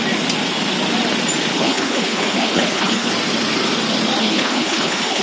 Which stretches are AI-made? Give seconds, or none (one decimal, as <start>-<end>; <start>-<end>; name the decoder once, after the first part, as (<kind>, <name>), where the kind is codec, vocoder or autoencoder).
1.5-3.1 (codec, HILCodec); 4.2-5.2